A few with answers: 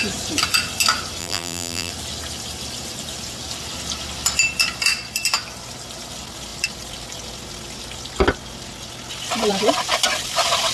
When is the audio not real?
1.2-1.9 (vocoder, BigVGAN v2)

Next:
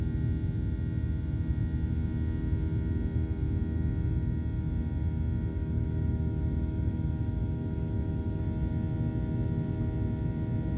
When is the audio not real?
5.5-8.4 (autoencoder, DAC-VAE)

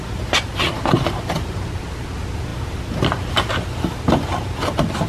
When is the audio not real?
none

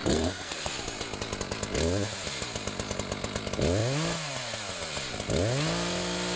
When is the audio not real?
0.0-0.7 (codec, SNAC)

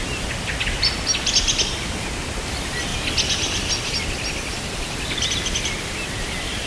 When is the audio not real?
none

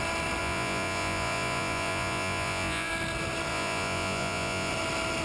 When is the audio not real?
0.4-2.9 (vocoder, Vocos); 3.5-4.7